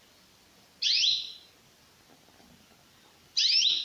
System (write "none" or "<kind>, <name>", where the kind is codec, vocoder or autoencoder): none